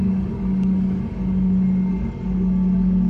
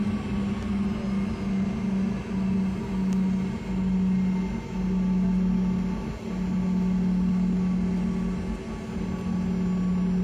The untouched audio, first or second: second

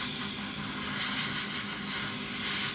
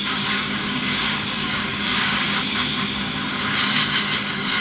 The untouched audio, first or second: first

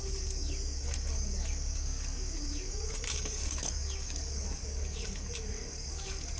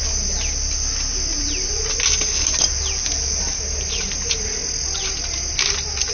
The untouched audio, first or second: second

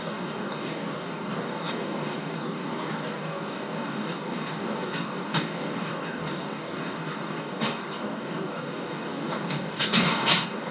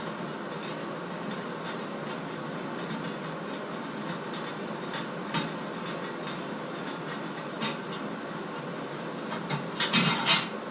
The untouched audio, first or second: second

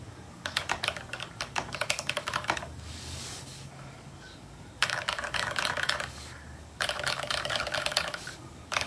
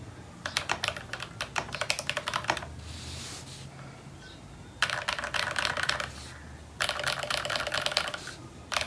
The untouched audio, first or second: second